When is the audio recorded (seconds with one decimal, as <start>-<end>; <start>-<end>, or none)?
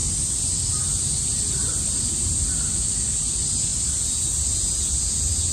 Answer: 0.0-5.5